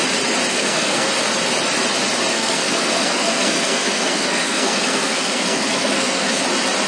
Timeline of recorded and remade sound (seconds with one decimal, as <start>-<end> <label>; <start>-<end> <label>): 0.0-0.5 recorded; 0.5-1.1 remade; 1.1-2.3 recorded; 2.3-6.4 remade; 6.4-6.9 recorded